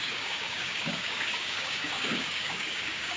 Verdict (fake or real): fake